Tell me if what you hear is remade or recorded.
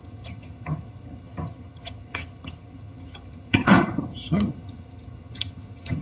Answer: remade